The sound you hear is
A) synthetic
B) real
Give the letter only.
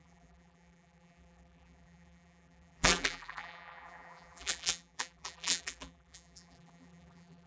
A